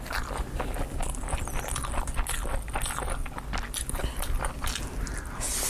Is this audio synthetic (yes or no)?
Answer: no